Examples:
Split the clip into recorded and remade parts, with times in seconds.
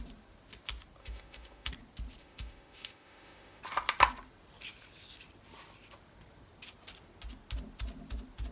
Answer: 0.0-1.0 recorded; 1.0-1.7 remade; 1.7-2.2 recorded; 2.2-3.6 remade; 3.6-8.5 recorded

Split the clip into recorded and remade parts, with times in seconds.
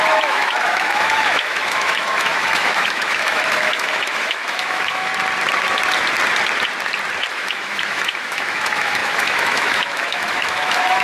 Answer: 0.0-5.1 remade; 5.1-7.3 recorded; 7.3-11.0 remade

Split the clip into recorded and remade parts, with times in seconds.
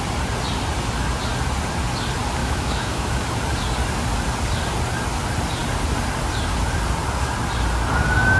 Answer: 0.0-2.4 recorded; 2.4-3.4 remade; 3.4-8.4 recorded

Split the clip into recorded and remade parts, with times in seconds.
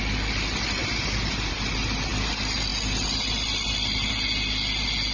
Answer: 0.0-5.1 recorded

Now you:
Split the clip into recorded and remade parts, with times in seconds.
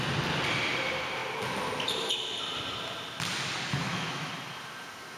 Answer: 0.0-3.7 recorded; 3.7-4.3 remade; 4.3-5.2 recorded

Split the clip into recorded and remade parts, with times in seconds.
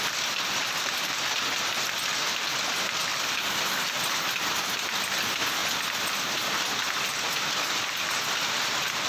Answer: 0.0-9.1 recorded